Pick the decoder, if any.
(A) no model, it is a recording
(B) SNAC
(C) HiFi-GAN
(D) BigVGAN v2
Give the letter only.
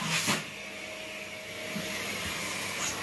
A